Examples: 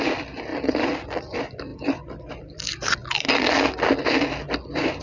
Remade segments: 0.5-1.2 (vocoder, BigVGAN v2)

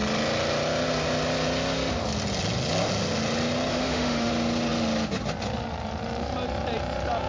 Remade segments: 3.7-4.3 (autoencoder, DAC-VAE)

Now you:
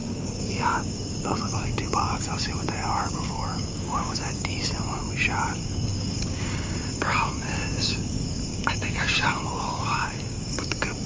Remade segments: 0.0-5.0 (codec, DAC); 5.5-11.1